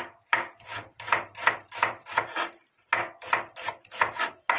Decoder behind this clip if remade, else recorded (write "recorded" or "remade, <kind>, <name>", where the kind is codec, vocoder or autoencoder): recorded